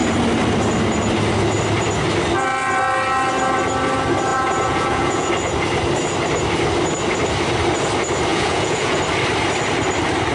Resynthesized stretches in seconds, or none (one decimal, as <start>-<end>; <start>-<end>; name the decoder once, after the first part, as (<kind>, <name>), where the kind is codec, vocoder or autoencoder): 4.3-5.3 (vocoder, Vocos); 8.3-9.0